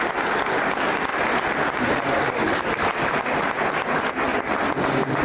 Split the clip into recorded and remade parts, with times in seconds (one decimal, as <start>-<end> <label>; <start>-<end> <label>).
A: 0.0-5.2 recorded